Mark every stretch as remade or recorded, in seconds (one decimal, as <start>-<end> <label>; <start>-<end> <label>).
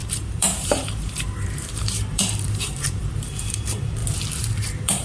0.0-4.0 remade; 4.0-4.5 recorded; 4.5-5.0 remade